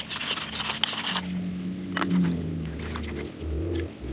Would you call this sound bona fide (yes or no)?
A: yes